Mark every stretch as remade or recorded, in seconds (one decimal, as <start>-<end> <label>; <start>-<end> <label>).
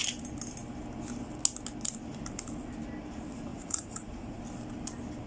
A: 0.0-3.5 recorded; 3.5-4.4 remade; 4.4-5.3 recorded